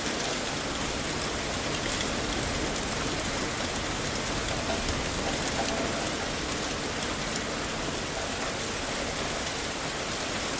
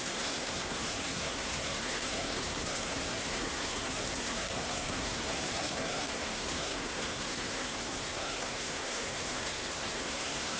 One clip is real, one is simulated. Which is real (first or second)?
first